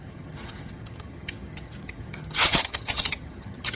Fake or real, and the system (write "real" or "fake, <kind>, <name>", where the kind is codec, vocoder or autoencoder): fake, vocoder, HiFi-GAN